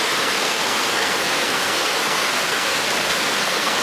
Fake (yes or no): yes